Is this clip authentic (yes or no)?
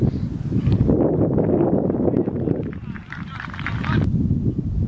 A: yes